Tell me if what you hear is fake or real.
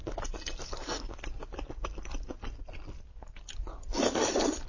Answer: real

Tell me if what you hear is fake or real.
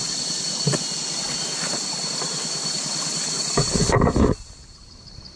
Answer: real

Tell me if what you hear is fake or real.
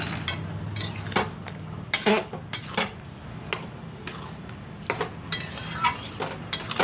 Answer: real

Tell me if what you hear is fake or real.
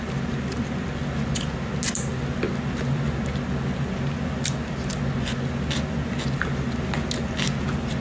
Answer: real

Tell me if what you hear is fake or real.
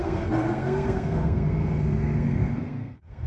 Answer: fake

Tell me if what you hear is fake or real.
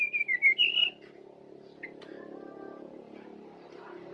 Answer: real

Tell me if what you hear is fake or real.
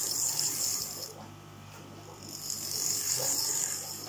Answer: real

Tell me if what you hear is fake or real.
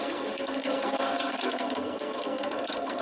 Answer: fake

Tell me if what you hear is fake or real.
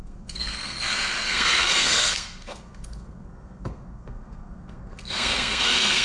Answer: fake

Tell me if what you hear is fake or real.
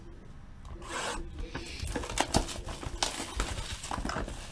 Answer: real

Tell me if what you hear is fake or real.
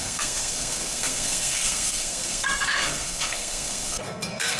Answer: fake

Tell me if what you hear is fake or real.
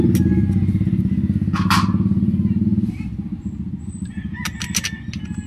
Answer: real